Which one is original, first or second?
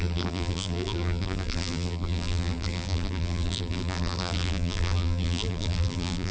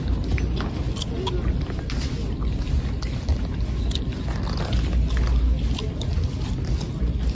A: second